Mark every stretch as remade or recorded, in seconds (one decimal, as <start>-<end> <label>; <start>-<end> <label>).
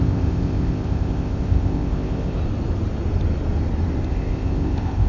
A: 0.0-2.4 remade; 2.4-4.1 recorded; 4.1-5.1 remade